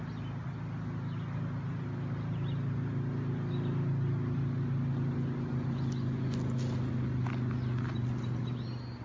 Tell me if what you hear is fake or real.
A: real